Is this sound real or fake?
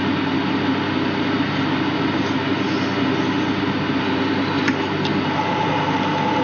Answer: real